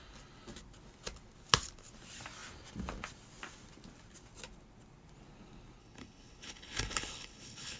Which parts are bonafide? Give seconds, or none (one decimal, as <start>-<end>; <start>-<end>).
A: 0.0-5.8